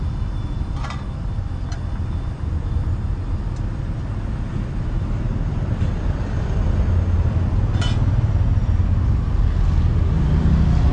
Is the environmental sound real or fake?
real